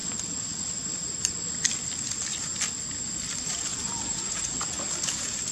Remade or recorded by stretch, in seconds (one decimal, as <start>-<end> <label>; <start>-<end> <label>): 0.0-3.7 recorded; 3.7-4.8 remade; 4.8-5.5 recorded